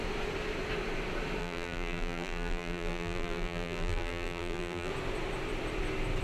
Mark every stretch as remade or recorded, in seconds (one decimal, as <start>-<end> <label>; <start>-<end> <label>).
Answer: 0.0-1.4 recorded; 1.4-4.9 remade; 4.9-6.2 recorded